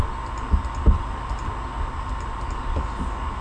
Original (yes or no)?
yes